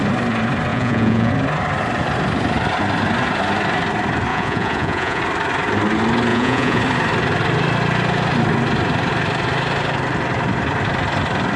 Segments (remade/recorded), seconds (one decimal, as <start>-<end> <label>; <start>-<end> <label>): 0.0-0.7 recorded; 0.7-1.3 remade; 1.3-4.3 recorded; 4.3-5.2 remade; 5.2-6.3 recorded; 6.3-6.8 remade; 6.8-11.6 recorded